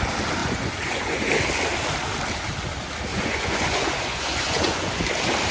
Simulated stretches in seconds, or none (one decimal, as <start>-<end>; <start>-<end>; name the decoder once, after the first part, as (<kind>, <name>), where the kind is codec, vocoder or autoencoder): 0.4-1.3 (vocoder, Vocos); 3.1-5.0